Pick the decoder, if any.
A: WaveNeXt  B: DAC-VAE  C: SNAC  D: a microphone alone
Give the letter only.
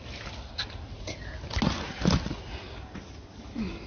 D